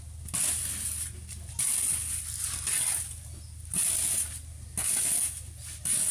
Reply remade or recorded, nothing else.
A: recorded